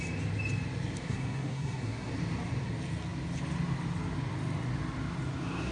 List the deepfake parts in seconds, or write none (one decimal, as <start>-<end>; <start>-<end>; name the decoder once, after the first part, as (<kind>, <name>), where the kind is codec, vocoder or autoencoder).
1.0-2.1 (codec, SNAC)

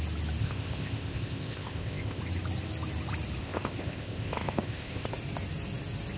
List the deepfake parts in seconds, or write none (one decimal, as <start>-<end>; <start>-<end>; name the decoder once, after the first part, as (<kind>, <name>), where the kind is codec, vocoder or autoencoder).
0.4-2.2 (codec, ZipCodec); 3.4-5.1

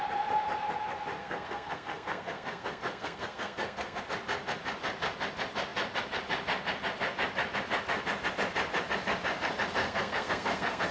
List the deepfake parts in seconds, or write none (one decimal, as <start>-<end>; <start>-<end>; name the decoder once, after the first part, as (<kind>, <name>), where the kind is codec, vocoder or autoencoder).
1.2-4.0 (codec, SNAC); 9.8-10.9

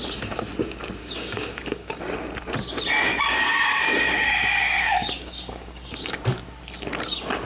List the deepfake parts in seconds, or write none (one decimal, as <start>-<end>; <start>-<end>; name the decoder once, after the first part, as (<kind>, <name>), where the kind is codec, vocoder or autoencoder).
1.0-2.0 (codec, DAC); 3.1-6.2